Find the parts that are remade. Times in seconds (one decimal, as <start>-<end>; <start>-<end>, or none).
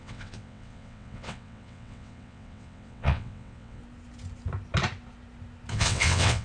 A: 0.0-3.8; 5.7-6.4